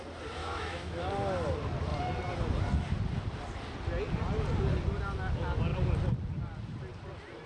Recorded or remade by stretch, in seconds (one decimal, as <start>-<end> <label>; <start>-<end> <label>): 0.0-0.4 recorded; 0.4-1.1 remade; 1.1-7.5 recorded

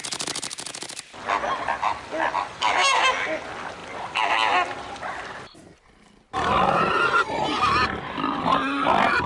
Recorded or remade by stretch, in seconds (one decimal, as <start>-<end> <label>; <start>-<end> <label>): 0.0-9.3 recorded

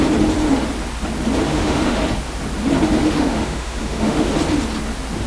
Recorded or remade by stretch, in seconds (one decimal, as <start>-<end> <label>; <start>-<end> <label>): 0.0-1.5 recorded; 1.5-2.0 remade; 2.0-3.1 recorded; 3.1-4.3 remade; 4.3-5.3 recorded

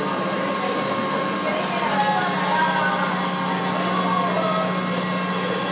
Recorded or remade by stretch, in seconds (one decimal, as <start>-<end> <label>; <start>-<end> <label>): 0.0-5.7 recorded

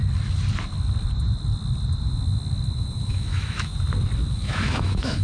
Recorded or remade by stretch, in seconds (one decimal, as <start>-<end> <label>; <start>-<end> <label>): 0.0-3.1 recorded; 3.1-3.7 remade; 3.7-4.3 recorded; 4.3-5.2 remade

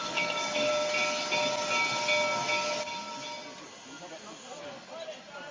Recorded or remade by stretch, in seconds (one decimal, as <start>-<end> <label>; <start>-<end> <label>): 0.0-0.7 remade; 0.7-5.5 recorded

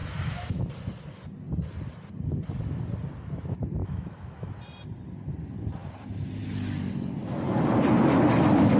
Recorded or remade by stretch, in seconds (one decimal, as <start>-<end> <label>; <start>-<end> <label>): 0.0-0.6 remade; 0.6-3.8 recorded; 3.8-4.5 remade; 4.5-8.8 recorded

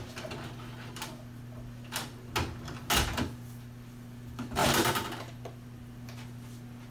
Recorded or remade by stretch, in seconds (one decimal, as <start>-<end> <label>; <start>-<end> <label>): 0.0-6.9 recorded